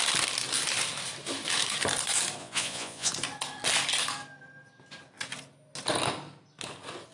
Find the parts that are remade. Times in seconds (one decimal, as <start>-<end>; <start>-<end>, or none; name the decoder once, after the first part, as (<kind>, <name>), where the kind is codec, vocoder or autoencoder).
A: 2.4-3.1 (vocoder, Vocos)